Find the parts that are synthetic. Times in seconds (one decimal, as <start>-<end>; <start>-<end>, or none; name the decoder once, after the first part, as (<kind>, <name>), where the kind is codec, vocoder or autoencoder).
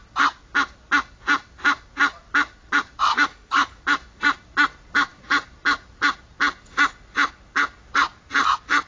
3.1-3.8 (codec, DAC)